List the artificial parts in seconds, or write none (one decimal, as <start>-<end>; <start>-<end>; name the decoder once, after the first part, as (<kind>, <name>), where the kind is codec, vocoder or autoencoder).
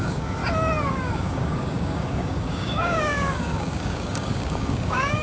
0.0-0.4 (codec, DAC); 0.9-5.2